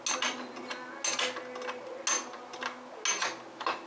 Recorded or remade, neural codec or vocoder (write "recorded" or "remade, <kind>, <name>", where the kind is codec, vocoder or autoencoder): recorded